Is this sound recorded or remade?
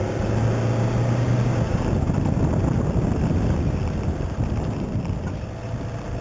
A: recorded